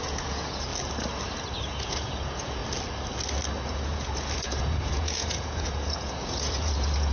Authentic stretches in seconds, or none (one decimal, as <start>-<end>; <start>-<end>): 0.7-1.7; 2.6-3.7